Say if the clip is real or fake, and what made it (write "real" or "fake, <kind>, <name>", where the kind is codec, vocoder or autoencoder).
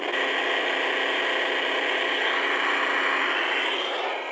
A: real